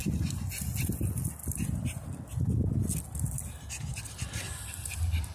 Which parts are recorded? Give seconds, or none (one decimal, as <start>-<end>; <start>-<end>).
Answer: 0.0-5.3